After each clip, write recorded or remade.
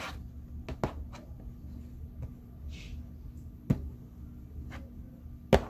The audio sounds recorded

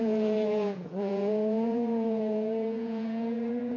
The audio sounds remade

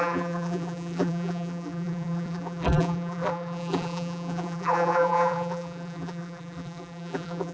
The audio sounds remade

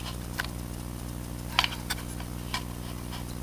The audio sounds recorded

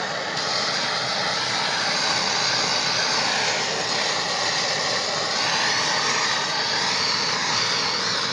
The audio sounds recorded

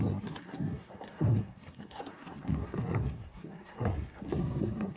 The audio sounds remade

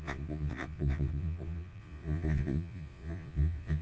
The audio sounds remade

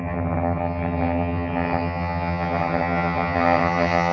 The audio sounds remade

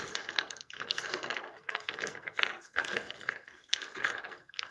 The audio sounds remade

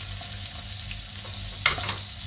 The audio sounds recorded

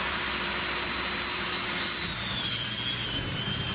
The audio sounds recorded